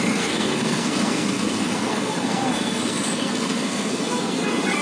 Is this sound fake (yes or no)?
yes